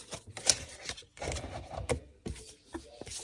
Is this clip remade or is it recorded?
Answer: recorded